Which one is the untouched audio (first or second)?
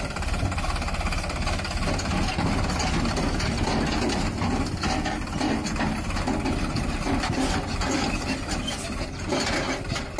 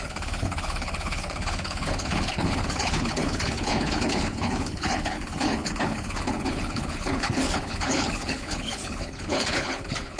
first